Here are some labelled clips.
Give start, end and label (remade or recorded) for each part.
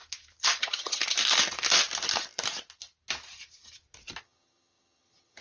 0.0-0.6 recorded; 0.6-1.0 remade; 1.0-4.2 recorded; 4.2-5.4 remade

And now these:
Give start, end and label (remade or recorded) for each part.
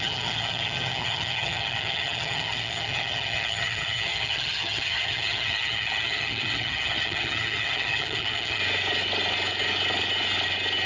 0.0-8.6 remade; 8.6-10.9 recorded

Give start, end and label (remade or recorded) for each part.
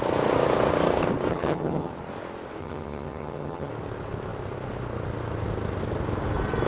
0.0-1.3 recorded; 1.3-1.9 remade; 1.9-2.6 recorded; 2.6-3.7 remade; 3.7-6.7 recorded